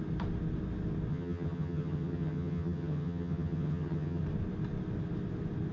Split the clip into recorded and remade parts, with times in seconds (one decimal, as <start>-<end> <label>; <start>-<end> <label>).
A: 0.0-1.1 recorded; 1.1-4.2 remade; 4.2-5.7 recorded